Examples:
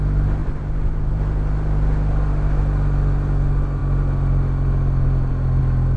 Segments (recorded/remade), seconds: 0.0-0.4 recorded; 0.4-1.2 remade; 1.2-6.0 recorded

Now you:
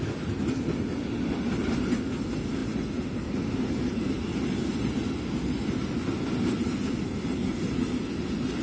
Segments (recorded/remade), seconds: 0.0-8.6 recorded

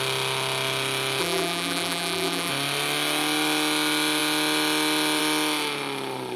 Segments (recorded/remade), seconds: 0.0-1.2 recorded; 1.2-2.5 remade; 2.5-6.4 recorded

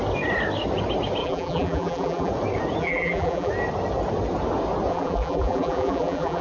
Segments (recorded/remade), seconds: 0.0-1.2 recorded; 1.2-2.3 remade; 2.3-2.8 recorded; 2.8-3.5 remade; 3.5-4.9 recorded; 4.9-6.4 remade

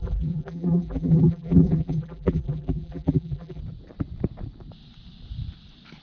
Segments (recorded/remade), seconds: 0.0-3.6 remade; 3.6-6.0 recorded

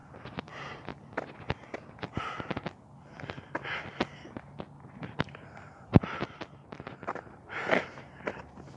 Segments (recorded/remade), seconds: 0.0-0.9 remade; 0.9-4.6 recorded; 4.6-8.8 remade

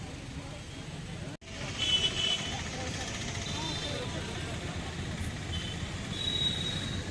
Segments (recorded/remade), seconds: 0.0-1.9 recorded; 1.9-5.9 remade; 5.9-7.1 recorded